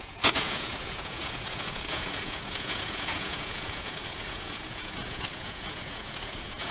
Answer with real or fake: fake